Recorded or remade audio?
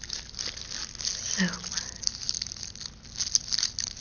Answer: recorded